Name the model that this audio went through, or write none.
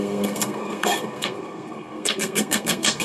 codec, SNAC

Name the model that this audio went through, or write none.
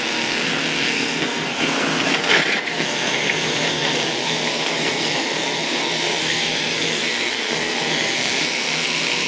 codec, SNAC